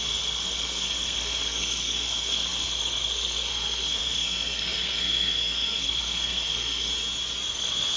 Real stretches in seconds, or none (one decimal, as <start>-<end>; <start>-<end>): 6.9-7.5